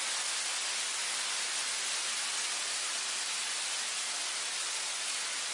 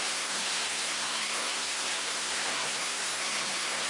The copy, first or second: second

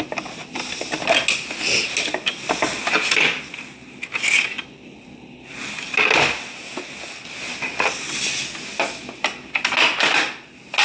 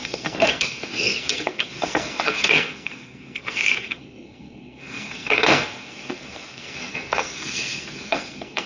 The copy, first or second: second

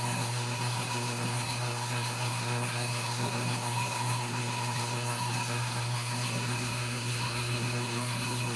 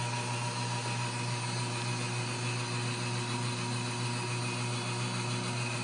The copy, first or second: first